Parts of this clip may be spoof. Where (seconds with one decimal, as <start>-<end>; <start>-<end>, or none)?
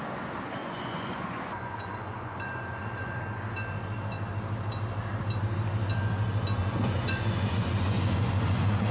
0.6-3.2; 6.6-8.9